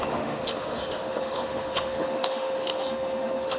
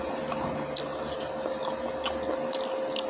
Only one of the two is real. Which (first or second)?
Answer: second